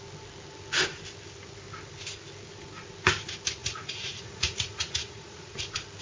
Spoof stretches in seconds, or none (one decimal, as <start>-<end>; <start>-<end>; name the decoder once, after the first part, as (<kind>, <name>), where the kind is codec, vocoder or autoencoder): 3.6-5.6 (vocoder, Vocos)